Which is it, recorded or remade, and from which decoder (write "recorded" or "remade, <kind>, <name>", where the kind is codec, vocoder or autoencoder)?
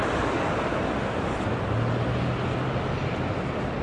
recorded